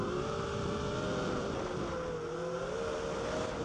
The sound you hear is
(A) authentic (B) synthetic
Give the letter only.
A